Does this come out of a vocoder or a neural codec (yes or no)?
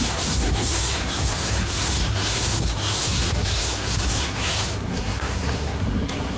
yes